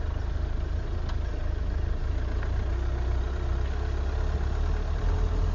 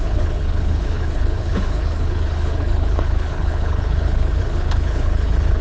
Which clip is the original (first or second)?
first